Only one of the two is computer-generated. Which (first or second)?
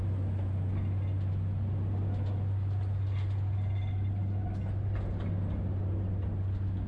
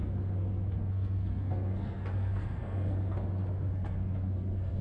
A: second